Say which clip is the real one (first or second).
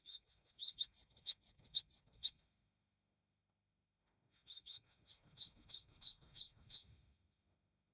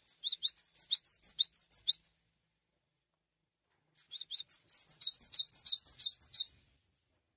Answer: second